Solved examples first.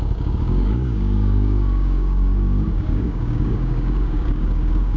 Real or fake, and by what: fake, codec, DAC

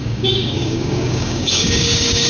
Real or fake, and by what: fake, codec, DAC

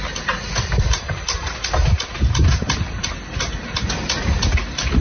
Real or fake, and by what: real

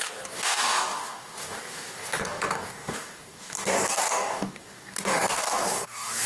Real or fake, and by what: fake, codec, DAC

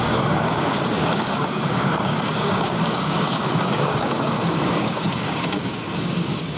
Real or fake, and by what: fake, codec, DAC